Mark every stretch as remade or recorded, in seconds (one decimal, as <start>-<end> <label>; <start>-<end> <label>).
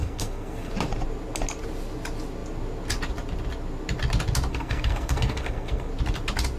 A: 0.0-0.7 remade; 0.7-4.5 recorded; 4.5-5.9 remade; 5.9-6.6 recorded